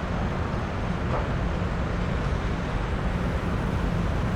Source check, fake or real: real